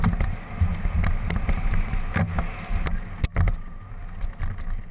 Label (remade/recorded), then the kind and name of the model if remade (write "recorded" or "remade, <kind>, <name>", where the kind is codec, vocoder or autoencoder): recorded